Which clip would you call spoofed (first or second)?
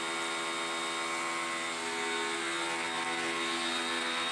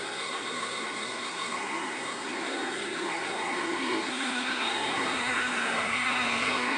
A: second